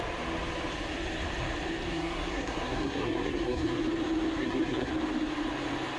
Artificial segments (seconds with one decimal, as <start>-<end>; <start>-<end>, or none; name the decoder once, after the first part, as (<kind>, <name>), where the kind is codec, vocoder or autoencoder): 1.9-3.8 (codec, SNAC); 4.4-4.9